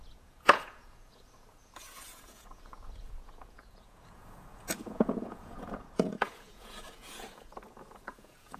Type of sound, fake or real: fake